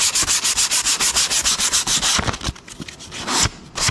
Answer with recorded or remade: recorded